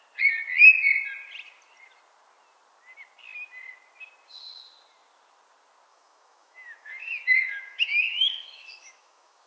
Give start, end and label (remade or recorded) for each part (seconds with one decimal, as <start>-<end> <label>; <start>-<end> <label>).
0.0-5.9 recorded; 5.9-9.5 remade